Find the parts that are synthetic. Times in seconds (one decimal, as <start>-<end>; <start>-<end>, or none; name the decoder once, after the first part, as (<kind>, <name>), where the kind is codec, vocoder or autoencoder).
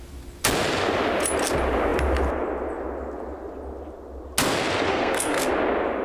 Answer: 4.9-5.5 (codec, SNAC)